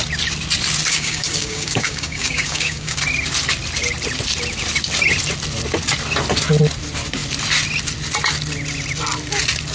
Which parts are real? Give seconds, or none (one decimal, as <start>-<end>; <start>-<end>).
0.0-0.9; 3.0-9.7